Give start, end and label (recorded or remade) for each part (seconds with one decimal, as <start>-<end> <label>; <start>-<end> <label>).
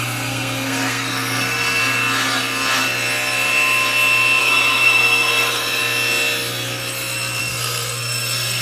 0.0-1.8 remade; 1.8-4.4 recorded; 4.4-5.8 remade; 5.8-7.4 recorded; 7.4-8.6 remade